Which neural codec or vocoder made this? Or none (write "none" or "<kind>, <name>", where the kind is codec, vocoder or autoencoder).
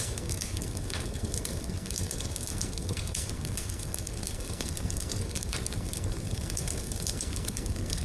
codec, SNAC